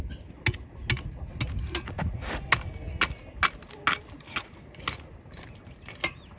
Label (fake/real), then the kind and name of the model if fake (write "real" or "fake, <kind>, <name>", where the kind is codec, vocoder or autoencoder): real